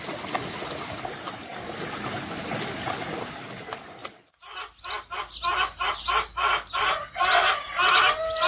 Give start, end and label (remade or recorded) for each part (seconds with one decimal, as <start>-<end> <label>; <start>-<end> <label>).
0.0-8.5 recorded